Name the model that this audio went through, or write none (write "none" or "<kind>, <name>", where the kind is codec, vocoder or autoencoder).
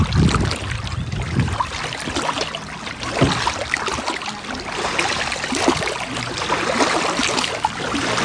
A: none